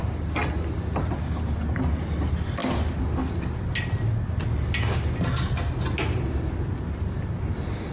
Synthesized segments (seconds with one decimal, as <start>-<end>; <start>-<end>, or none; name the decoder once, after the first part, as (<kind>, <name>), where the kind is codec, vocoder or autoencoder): none